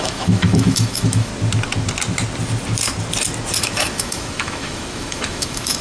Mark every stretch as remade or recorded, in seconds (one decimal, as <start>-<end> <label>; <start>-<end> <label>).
0.0-1.3 remade; 1.3-3.6 recorded; 3.6-5.8 remade